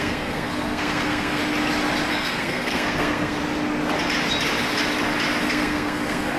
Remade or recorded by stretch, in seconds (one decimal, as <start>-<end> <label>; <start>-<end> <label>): 0.0-1.4 remade; 1.4-2.1 recorded; 2.1-3.4 remade; 3.4-5.4 recorded; 5.4-6.4 remade